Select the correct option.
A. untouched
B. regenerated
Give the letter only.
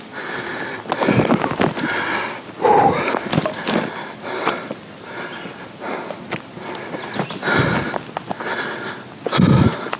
A